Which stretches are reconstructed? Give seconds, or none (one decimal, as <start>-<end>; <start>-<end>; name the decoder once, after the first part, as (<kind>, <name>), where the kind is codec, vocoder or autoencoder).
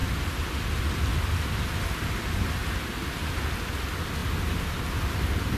none